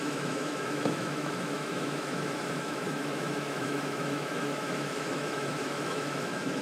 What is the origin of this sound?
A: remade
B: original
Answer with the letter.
A